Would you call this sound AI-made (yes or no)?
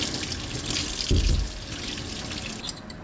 no